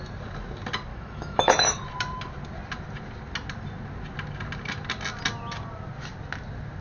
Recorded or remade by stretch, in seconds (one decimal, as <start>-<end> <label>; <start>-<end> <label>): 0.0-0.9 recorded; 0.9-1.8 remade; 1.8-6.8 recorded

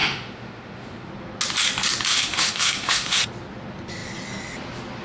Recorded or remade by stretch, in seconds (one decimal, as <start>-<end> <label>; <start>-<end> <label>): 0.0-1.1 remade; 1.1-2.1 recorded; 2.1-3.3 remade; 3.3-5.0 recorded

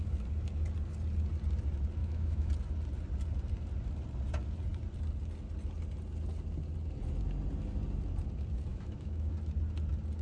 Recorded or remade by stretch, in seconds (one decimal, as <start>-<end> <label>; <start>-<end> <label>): 0.0-2.0 recorded; 2.0-2.5 remade; 2.5-8.7 recorded; 8.7-9.3 remade; 9.3-10.2 recorded

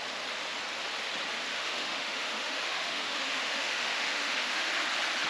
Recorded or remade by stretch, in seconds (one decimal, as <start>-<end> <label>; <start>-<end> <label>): 0.0-1.5 recorded; 1.5-4.7 remade; 4.7-5.3 recorded

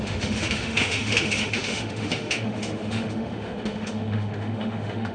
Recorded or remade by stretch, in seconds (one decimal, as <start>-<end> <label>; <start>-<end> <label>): 0.0-5.1 remade